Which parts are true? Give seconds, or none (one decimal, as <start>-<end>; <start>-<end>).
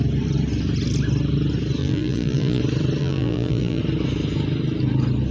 0.0-1.8; 2.6-3.0; 3.8-5.3